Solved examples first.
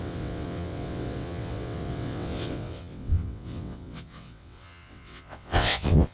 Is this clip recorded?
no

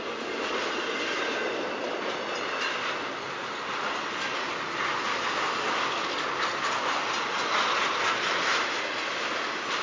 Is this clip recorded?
yes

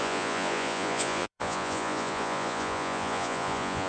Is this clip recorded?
no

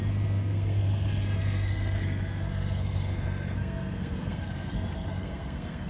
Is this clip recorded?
no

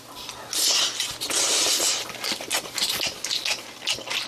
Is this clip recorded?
yes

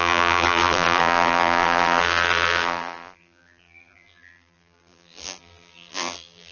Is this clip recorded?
no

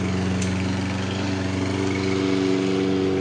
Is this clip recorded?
yes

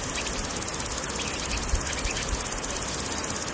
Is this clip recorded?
yes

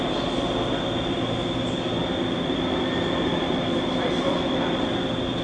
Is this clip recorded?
yes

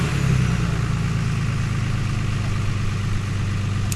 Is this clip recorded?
yes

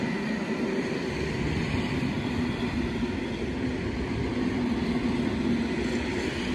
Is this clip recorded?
yes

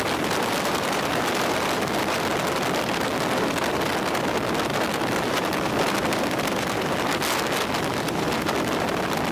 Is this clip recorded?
yes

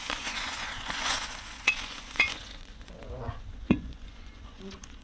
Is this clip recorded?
no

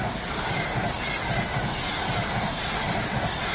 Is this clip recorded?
yes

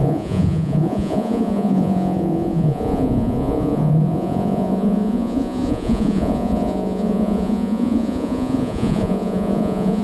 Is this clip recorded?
no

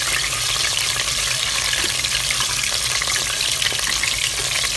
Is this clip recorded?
yes